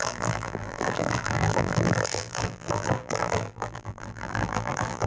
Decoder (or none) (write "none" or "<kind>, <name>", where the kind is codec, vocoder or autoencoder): vocoder, BigVGAN v2